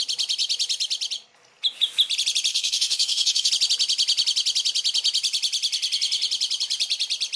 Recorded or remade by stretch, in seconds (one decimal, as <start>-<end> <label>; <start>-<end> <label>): 0.0-2.5 recorded; 2.5-3.5 remade; 3.5-7.4 recorded